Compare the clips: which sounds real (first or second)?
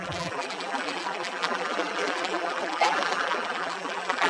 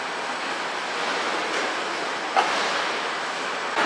second